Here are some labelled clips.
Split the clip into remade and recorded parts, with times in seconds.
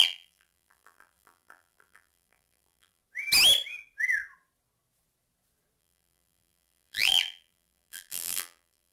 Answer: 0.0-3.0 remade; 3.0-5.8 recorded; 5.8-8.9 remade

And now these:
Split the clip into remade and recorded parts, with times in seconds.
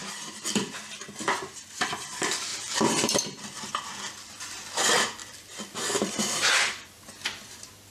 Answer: 0.0-1.3 remade; 1.3-2.5 recorded; 2.5-3.2 remade; 3.2-5.2 recorded; 5.2-7.5 remade; 7.5-7.9 recorded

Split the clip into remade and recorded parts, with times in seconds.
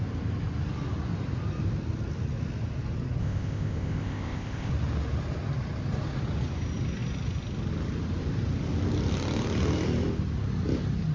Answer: 0.0-3.2 recorded; 3.2-4.7 remade; 4.7-11.1 recorded